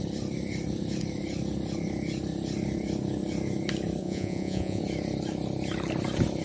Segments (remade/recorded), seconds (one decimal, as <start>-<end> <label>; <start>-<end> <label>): 0.0-4.0 recorded; 4.0-4.8 remade; 4.8-6.4 recorded